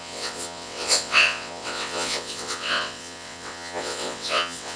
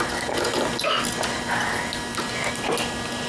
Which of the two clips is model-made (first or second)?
first